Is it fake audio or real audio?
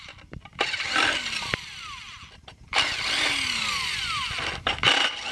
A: real